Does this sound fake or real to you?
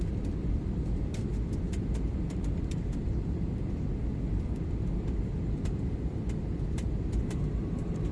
fake